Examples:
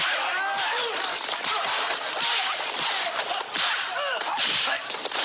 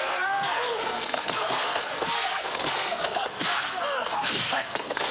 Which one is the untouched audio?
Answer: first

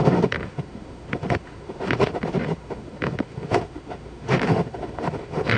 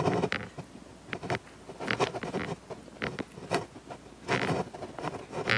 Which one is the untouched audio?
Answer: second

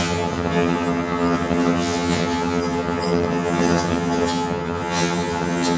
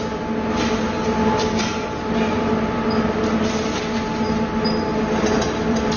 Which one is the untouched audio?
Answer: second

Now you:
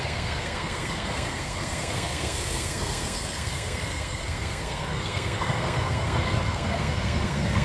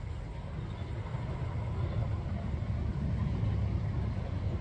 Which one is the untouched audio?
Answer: second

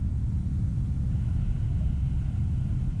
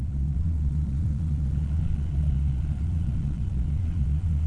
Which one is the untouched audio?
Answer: first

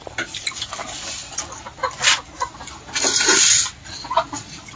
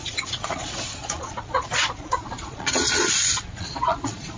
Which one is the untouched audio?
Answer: first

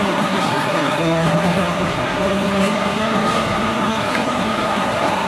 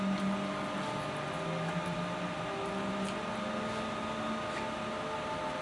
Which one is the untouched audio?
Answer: second